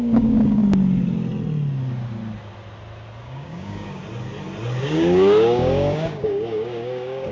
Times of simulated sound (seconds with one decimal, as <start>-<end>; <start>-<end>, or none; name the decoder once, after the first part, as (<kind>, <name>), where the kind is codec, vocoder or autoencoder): 0.0-0.6 (codec, DAC); 3.2-4.0; 4.8-7.3